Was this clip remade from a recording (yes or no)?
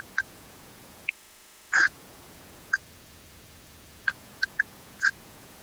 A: yes